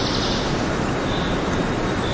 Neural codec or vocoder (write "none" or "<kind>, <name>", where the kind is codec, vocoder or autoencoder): none